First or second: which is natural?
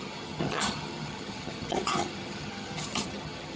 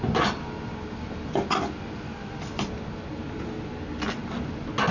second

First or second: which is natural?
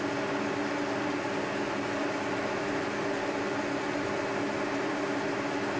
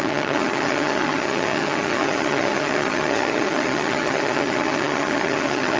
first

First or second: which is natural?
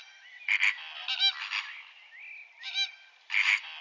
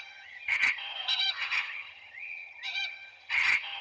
first